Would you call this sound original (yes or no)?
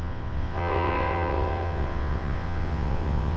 no